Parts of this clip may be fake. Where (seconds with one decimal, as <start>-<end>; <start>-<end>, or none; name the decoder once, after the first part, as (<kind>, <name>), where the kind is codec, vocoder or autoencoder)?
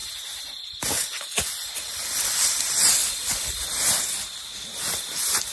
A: 0.0-0.8 (vocoder, BigVGAN v2)